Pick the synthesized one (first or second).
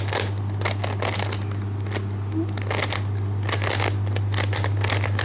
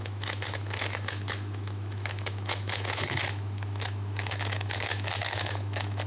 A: second